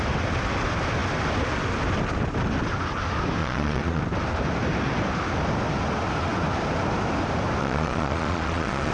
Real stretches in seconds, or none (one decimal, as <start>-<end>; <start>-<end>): 0.0-3.4; 4.0-7.6